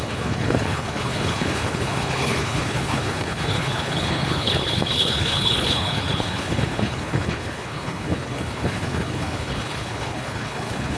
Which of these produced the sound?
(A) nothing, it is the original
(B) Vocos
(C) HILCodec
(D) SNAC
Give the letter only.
C